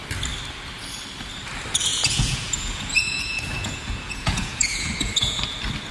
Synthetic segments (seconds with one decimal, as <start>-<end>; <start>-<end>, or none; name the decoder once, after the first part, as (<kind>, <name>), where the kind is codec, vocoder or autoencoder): 1.9-5.4 (vocoder, Vocos)